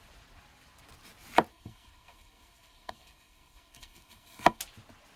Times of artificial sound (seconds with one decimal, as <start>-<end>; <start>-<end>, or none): 1.5-4.6

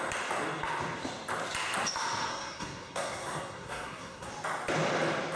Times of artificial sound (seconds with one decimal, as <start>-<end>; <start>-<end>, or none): 2.3-4.3